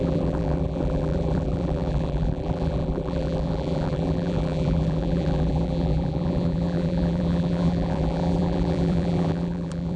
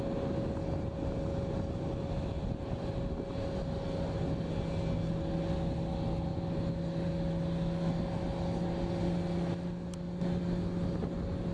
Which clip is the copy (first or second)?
first